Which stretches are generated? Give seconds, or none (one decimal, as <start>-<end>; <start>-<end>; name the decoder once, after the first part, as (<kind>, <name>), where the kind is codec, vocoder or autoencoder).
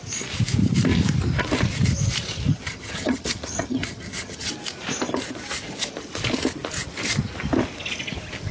2.5-4.5 (vocoder, HiFi-GAN)